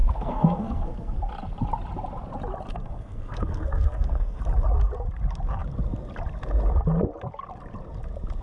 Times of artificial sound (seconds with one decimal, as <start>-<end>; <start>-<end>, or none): 0.0-1.3; 2.7-4.4